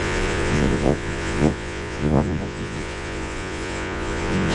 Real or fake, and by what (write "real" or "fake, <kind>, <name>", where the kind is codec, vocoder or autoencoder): fake, vocoder, Vocos